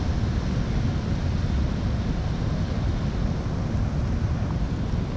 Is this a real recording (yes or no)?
yes